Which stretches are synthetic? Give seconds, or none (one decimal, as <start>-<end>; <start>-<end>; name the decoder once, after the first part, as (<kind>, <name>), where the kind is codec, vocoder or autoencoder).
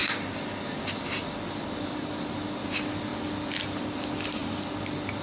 none